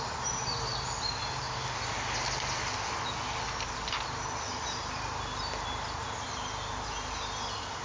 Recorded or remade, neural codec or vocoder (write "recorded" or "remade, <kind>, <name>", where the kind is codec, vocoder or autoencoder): recorded